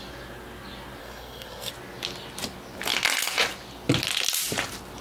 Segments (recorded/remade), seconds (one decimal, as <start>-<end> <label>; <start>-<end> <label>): 0.0-1.0 recorded; 1.0-1.7 remade; 1.7-5.0 recorded